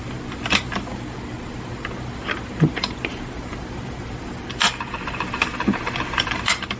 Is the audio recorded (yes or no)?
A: no